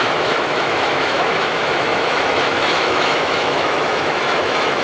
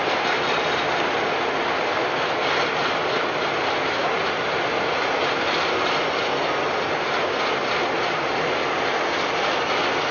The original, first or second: second